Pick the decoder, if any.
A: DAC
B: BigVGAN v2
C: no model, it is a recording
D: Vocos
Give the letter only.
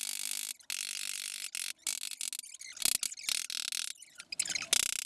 C